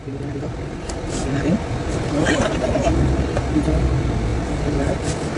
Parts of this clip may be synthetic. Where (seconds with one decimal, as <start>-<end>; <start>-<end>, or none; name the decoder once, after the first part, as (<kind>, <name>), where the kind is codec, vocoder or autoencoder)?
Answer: 0.0-5.4 (vocoder, BigVGAN v2)